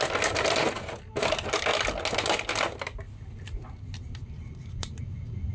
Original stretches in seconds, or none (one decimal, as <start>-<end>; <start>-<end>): 0.0-5.5